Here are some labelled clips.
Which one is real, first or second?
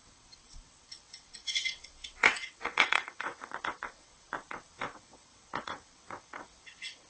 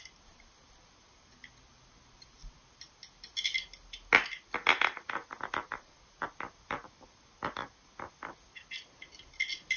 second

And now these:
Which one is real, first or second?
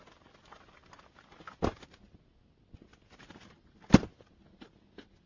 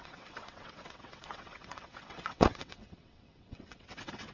first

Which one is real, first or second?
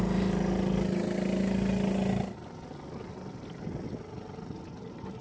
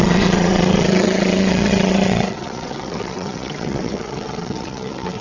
first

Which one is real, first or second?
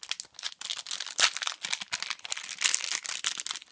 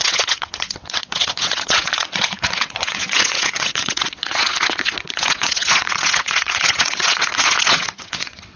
first